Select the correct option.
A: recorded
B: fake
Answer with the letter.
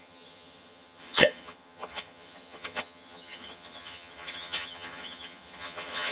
B